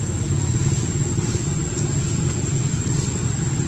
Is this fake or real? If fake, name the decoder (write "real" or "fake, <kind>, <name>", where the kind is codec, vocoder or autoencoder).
real